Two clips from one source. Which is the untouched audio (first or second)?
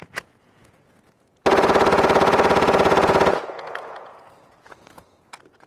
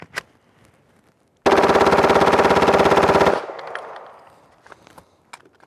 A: second